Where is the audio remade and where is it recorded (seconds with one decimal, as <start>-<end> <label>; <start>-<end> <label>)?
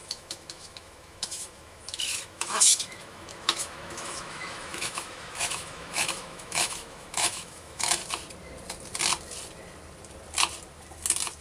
0.0-8.0 remade; 8.0-11.4 recorded